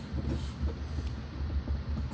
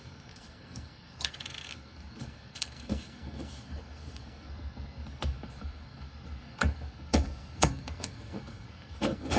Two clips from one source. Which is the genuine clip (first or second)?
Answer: first